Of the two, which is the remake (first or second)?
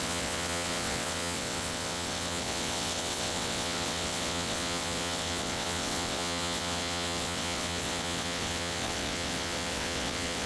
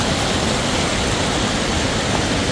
first